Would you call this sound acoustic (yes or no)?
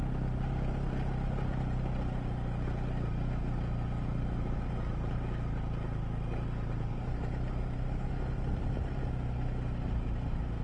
yes